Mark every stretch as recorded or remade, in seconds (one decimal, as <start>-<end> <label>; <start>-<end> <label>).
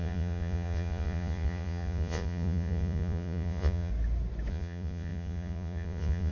0.0-3.9 remade; 3.9-4.5 recorded; 4.5-6.3 remade